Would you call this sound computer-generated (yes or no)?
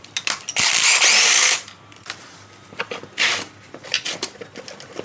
no